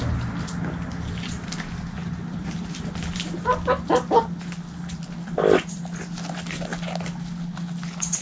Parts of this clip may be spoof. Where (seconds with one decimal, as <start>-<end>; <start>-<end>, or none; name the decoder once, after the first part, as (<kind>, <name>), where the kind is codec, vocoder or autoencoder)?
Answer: none